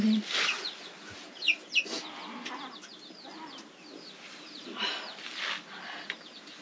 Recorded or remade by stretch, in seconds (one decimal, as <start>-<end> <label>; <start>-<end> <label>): 0.0-6.6 recorded